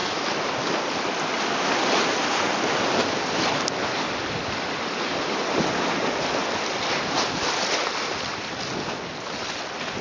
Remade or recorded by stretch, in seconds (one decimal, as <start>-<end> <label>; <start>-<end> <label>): 0.0-10.0 recorded